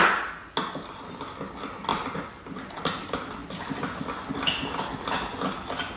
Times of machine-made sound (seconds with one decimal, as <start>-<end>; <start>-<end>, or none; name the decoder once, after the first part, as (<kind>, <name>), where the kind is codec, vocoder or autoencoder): 1.9-3.0 (vocoder, BigVGAN v2)